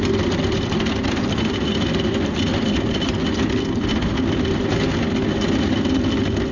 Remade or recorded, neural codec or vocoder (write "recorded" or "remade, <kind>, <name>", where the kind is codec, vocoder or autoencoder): recorded